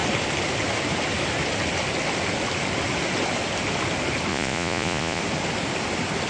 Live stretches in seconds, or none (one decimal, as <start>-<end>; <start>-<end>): 0.0-4.3; 5.2-6.3